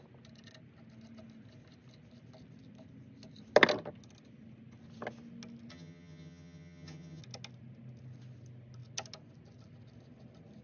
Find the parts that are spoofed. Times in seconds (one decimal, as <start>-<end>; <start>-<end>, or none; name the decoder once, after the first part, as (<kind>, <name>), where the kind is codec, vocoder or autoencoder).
5.7-7.2 (vocoder, HiFi-GAN)